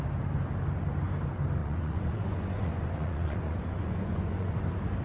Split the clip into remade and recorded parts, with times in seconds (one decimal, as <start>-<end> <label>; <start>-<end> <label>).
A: 0.0-1.6 recorded; 1.6-4.6 remade; 4.6-5.0 recorded